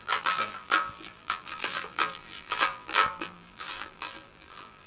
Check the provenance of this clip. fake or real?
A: fake